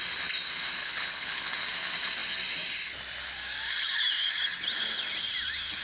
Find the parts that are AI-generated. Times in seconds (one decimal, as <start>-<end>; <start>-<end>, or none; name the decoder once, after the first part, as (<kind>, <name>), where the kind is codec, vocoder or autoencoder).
0.8-1.5 (codec, HILCodec)